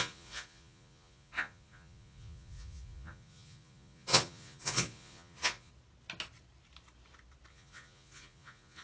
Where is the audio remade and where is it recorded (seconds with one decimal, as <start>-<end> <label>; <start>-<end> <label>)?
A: 0.0-5.7 remade; 5.7-7.5 recorded; 7.5-8.8 remade